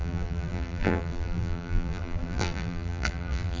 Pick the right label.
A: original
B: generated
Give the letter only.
B